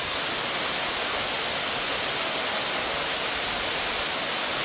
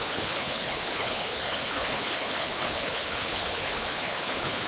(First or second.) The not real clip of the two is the second